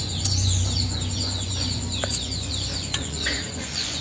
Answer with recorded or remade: remade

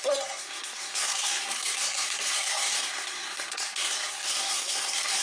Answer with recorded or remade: remade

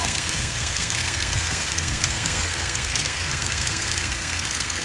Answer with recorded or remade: remade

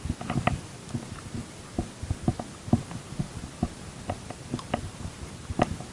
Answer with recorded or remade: recorded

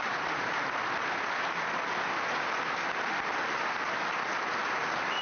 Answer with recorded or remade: recorded